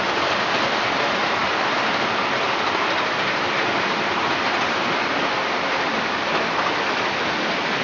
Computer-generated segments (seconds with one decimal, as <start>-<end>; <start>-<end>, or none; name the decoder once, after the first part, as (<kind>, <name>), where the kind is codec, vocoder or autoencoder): 0.0-7.8 (vocoder, BigVGAN v2)